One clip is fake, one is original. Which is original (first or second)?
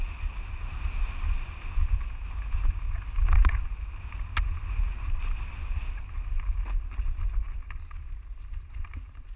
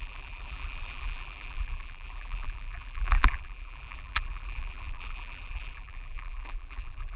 first